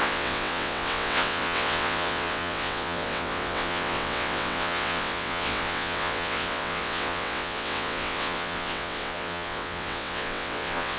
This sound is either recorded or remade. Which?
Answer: remade